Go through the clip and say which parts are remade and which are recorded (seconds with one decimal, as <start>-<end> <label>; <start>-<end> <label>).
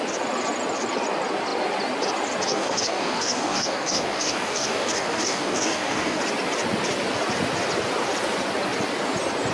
0.0-2.5 recorded; 2.5-6.2 remade; 6.2-9.5 recorded